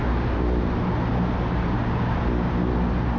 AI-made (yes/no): no